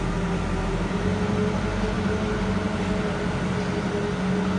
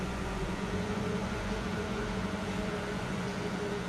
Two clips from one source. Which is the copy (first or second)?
second